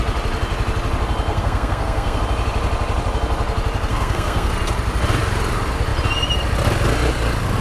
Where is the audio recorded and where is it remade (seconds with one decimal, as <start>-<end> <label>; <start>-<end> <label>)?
0.0-1.3 recorded; 1.3-2.2 remade; 2.2-3.9 recorded; 3.9-4.5 remade; 4.5-7.6 recorded